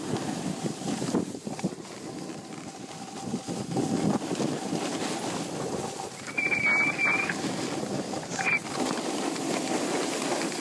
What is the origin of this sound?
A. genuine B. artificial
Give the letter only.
A